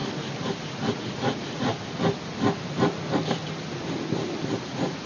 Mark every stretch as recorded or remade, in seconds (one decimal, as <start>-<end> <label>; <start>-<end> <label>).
0.0-0.9 recorded; 0.9-1.7 remade; 1.7-4.6 recorded; 4.6-5.1 remade